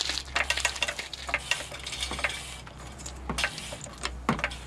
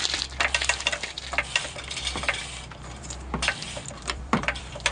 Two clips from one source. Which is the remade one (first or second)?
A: second